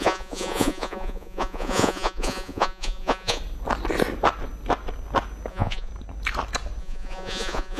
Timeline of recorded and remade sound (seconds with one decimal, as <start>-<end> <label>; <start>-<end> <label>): 0.0-3.4 remade; 3.4-5.5 recorded; 5.5-5.9 remade; 5.9-6.8 recorded; 6.8-7.8 remade